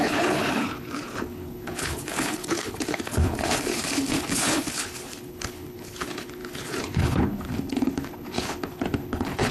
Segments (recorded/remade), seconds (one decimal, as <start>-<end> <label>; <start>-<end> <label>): 0.0-9.5 remade